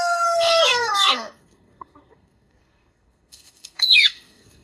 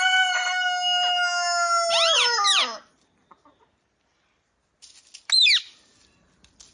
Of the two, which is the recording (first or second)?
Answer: second